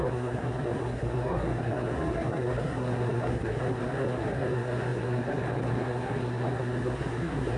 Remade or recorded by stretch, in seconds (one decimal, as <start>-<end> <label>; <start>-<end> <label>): 0.0-7.6 remade